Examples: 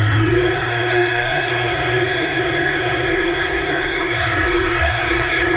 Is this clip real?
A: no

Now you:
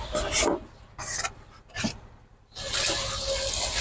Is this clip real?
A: yes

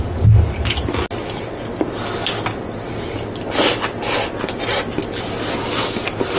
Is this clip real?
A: yes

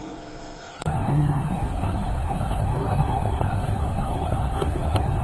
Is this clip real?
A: no